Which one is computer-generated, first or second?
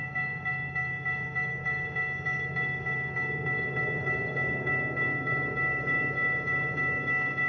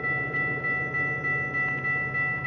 first